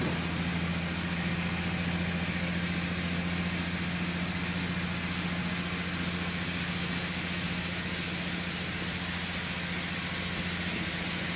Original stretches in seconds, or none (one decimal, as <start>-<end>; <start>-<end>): 0.0-11.4